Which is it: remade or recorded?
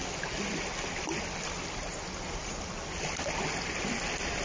recorded